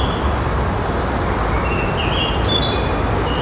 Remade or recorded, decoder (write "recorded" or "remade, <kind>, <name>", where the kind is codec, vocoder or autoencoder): recorded